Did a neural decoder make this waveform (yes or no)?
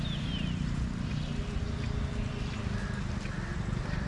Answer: no